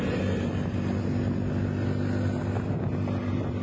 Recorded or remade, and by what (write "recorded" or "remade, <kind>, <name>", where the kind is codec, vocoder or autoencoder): recorded